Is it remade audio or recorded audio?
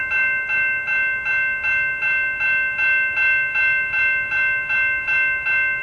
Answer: recorded